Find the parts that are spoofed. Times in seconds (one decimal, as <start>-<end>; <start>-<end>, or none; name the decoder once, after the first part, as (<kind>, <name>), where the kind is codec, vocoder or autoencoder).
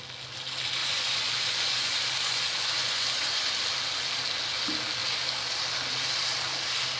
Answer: 0.8-3.5 (vocoder, Vocos)